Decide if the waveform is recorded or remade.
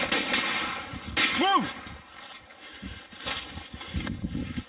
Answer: recorded